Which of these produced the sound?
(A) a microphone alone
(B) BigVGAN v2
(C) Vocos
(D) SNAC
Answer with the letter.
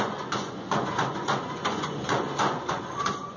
C